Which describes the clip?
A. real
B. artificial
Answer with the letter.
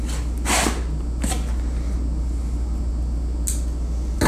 A